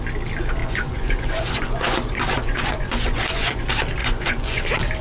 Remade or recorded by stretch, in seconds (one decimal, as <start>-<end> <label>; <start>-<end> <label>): 0.0-0.6 recorded; 0.6-3.6 remade; 3.6-4.0 recorded; 4.0-4.6 remade; 4.6-5.0 recorded